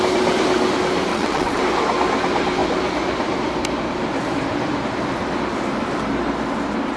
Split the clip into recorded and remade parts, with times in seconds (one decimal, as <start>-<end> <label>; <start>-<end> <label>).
0.0-1.1 recorded; 1.1-1.6 remade; 1.6-7.0 recorded